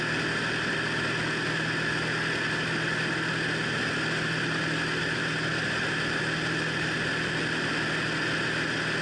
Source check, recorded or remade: recorded